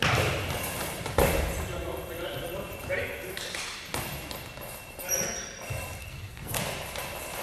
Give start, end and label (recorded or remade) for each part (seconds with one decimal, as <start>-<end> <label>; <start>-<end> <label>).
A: 0.0-6.0 recorded; 6.0-6.6 remade; 6.6-7.4 recorded